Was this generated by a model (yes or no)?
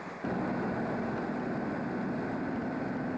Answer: no